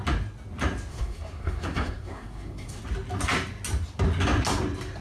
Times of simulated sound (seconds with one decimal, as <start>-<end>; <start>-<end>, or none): 0.9-2.8